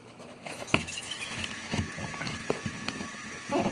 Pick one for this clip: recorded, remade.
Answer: remade